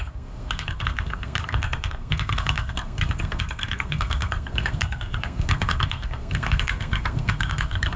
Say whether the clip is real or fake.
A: fake